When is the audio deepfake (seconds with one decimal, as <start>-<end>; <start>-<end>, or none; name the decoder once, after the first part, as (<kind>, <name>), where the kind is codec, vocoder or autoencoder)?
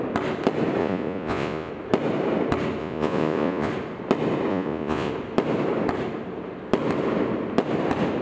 0.8-1.7 (vocoder, Vocos); 2.8-3.7; 4.5-5.1